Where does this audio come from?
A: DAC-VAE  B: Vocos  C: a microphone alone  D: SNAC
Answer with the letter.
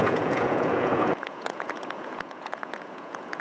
B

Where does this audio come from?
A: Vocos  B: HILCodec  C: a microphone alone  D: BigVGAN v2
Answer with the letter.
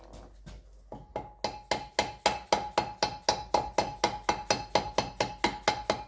C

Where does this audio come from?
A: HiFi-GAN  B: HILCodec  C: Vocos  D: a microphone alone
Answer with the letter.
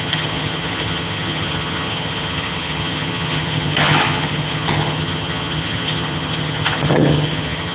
A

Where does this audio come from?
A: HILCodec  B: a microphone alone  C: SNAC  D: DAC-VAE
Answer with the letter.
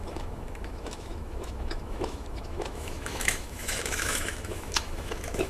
D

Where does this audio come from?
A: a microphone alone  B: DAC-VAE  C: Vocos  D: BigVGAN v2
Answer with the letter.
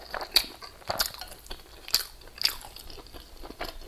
A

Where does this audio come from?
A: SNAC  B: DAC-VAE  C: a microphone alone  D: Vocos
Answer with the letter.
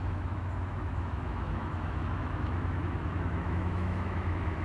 B